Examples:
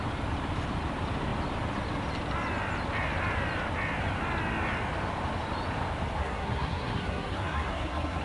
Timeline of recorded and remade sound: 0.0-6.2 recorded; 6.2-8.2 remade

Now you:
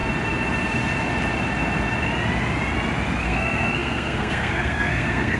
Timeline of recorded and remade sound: 0.0-3.2 recorded; 3.2-5.4 remade